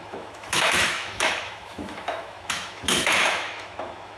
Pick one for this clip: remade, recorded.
remade